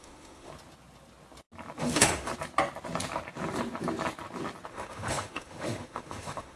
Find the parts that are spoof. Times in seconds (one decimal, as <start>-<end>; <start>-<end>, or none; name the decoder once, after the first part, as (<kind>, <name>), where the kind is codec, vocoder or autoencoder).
0.0-0.5 (autoencoder, DAC-VAE); 1.8-2.3; 4.7-6.6